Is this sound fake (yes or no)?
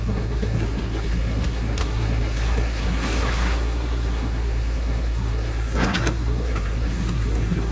yes